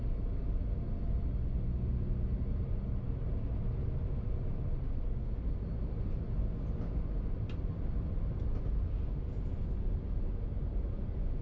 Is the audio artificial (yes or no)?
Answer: no